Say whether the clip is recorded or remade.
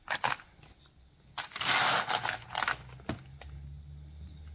recorded